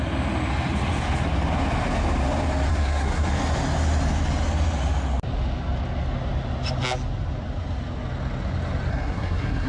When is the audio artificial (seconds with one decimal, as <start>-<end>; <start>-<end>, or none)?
2.7-3.3; 8.9-9.7